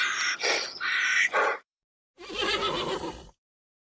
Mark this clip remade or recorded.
recorded